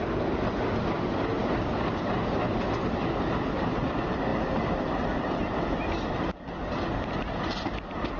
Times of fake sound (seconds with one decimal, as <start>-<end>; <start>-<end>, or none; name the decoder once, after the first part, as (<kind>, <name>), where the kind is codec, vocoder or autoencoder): none